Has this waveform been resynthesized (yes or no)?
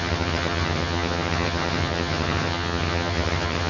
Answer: yes